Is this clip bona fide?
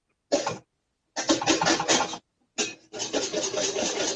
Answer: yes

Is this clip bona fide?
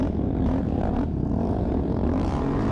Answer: no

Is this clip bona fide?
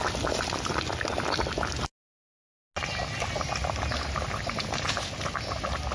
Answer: yes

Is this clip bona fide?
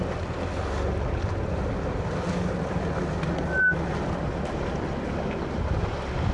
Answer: yes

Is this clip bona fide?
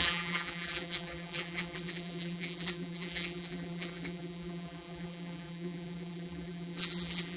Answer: no